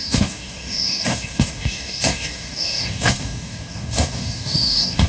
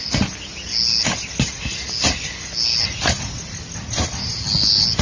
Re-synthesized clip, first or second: first